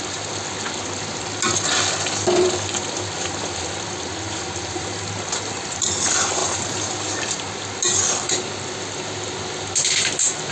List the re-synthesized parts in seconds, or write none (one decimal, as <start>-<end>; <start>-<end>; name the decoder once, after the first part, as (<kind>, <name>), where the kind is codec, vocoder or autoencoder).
none